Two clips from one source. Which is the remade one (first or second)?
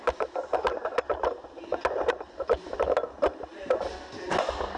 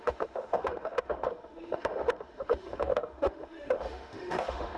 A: second